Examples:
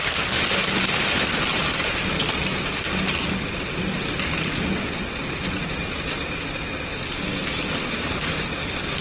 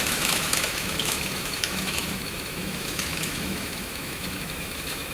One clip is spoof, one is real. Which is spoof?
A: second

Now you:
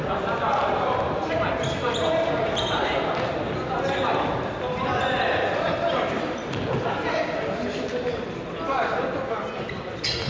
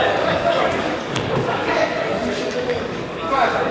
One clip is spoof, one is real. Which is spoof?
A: second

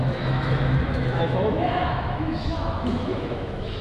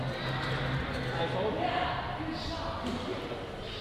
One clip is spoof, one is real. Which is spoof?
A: first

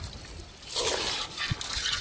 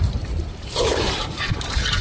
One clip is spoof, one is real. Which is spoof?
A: second